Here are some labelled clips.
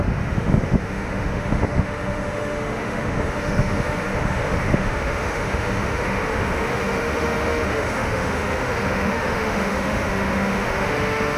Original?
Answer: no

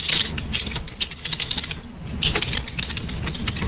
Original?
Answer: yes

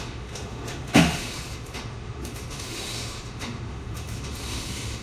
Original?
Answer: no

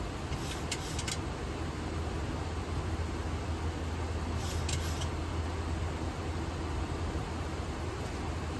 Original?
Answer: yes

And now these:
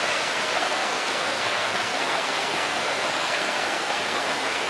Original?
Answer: no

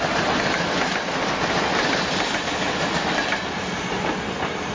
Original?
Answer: yes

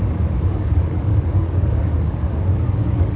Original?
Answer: no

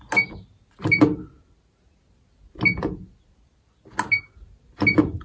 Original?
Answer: yes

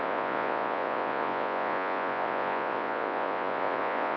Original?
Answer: no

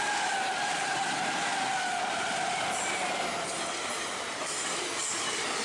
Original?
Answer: yes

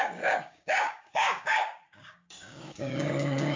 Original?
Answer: no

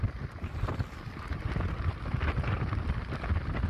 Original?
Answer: yes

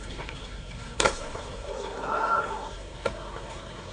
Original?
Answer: no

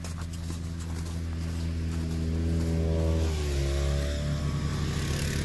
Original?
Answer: yes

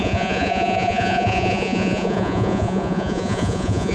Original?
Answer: no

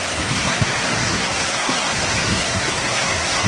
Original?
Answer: no